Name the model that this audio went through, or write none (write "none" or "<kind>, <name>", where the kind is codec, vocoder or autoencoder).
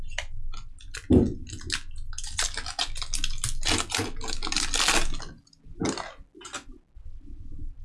none